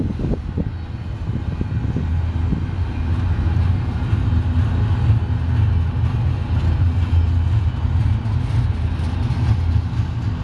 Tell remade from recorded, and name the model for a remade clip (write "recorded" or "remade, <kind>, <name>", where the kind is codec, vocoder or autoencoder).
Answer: recorded